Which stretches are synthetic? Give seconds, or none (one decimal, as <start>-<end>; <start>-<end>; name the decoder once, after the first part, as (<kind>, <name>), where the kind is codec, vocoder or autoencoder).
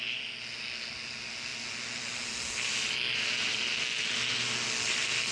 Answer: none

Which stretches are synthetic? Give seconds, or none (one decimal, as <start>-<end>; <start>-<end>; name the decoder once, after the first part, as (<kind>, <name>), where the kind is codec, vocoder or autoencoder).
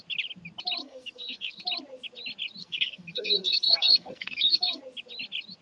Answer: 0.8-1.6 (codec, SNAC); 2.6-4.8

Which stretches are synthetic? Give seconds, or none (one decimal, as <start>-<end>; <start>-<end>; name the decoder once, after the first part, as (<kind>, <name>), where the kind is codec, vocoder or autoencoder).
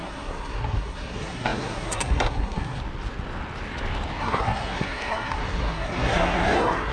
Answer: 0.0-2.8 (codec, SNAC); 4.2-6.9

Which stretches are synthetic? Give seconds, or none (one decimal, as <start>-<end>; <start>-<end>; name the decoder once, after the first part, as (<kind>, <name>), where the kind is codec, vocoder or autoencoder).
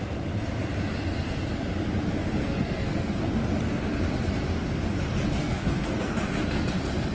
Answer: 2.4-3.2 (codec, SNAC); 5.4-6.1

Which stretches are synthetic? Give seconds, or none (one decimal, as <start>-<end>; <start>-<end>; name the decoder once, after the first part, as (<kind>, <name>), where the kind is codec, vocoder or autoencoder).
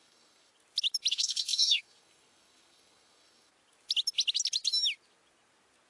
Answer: 0.0-0.5 (codec, SNAC); 1.1-3.5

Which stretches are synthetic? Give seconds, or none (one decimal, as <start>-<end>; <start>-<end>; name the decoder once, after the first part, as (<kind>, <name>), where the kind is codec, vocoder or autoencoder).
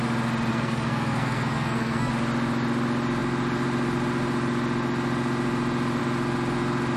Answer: 0.5-2.1 (codec, SNAC)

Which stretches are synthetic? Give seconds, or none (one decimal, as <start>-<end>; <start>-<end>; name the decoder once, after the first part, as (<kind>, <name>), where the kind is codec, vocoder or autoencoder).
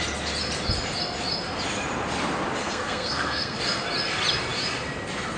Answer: 2.6-3.6 (codec, SNAC)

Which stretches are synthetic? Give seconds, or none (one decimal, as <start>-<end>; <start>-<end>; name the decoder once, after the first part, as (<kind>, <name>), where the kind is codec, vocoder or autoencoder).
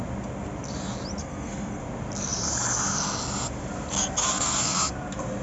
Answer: 1.2-1.8 (codec, SNAC); 4.2-4.9